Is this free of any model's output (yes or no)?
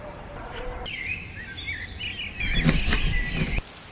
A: yes